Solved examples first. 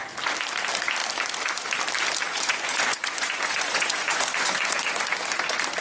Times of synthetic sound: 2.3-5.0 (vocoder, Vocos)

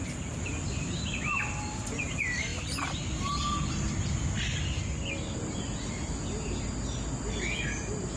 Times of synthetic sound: none

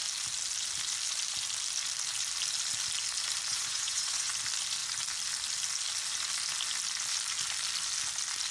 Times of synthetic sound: 3.5-4.3 (vocoder, Vocos)

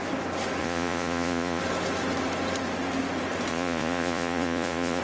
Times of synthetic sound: 0.6-1.6 (vocoder, Vocos); 3.5-5.0

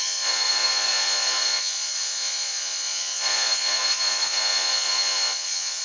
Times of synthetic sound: 0.0-5.8 (vocoder, Vocos)

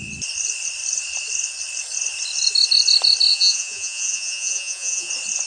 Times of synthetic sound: 3.3-5.1 (vocoder, Vocos)

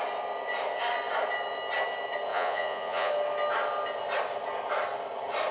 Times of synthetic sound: 2.3-3.1 (vocoder, Vocos)